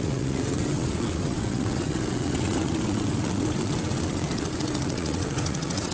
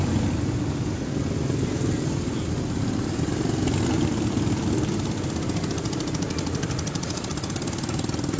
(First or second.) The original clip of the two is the second